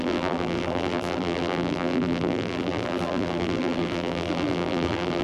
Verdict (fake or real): fake